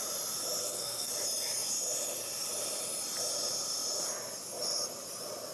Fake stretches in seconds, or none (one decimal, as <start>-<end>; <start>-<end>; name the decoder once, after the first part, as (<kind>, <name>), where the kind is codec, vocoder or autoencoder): 0.6-1.1 (codec, SNAC)